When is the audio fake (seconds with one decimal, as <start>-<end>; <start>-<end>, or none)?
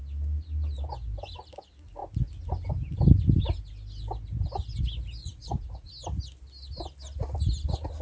5.2-5.9